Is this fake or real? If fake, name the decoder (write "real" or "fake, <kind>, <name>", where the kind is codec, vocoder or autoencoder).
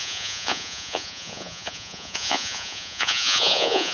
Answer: fake, vocoder, Vocos